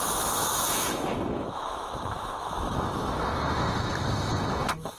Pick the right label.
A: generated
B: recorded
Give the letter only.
A